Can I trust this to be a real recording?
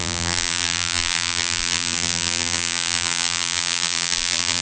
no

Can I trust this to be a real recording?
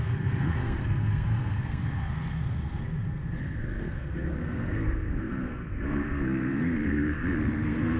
no